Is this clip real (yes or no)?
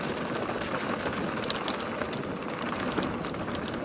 yes